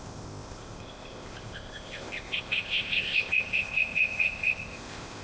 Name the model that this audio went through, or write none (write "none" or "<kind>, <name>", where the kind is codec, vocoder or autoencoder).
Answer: codec, ZipCodec